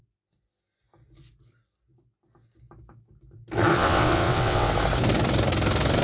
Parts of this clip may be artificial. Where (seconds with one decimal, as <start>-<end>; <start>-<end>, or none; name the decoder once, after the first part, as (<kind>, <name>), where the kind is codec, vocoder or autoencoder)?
3.7-4.7 (vocoder, WaveNeXt)